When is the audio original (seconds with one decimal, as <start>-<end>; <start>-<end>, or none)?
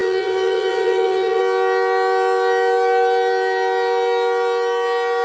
1.4-5.2